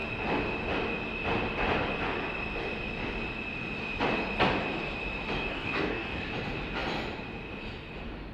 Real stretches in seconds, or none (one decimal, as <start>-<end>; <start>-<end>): 0.0-5.5; 6.2-8.3